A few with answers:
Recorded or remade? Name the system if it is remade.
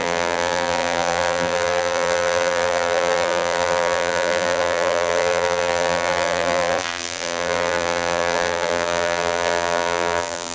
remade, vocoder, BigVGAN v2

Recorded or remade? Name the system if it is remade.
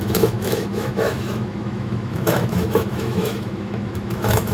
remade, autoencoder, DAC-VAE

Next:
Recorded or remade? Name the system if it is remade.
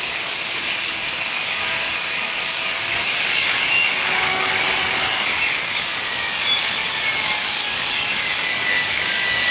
remade, codec, DAC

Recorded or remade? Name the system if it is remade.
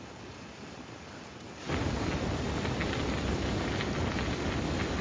recorded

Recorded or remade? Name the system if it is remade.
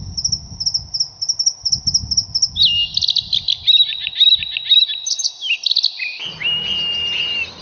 recorded